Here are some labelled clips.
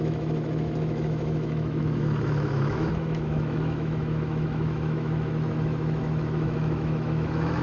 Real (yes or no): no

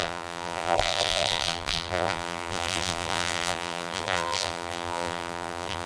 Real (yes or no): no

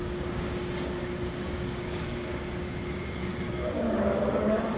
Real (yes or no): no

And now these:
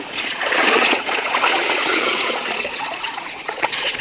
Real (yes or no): no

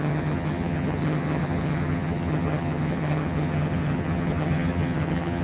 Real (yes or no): no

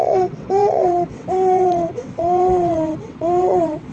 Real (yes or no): no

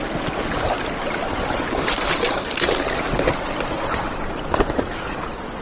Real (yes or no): yes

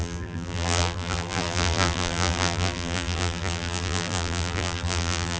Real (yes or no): no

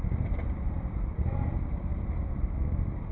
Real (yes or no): no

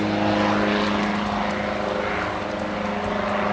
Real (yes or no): yes